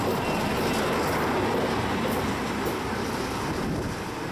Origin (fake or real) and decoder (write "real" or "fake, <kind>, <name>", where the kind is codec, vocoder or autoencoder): real